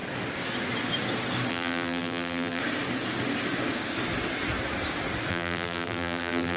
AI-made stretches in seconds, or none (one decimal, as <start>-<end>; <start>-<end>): 1.5-2.6; 5.3-6.6